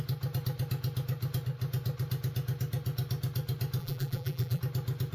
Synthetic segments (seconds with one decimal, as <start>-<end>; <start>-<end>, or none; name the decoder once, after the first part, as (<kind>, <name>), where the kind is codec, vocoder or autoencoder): 3.8-4.6 (vocoder, BigVGAN v2)